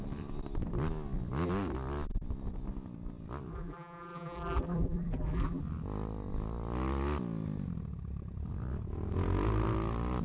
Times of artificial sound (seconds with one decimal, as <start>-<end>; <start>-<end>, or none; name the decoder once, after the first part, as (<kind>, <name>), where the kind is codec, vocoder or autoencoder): 3.5-5.6 (vocoder, BigVGAN v2)